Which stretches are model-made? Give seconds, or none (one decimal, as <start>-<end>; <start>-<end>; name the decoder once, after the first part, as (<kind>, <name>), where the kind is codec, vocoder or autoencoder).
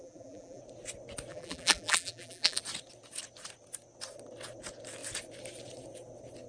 0.0-0.6 (vocoder, BigVGAN v2); 1.3-2.6